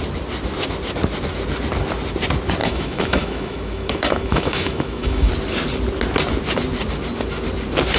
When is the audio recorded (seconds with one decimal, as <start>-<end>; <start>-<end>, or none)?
0.0-2.6; 5.3-8.0